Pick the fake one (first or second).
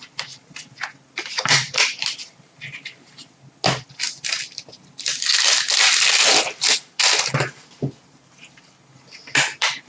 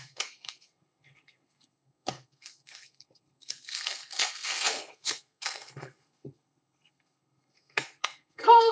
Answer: second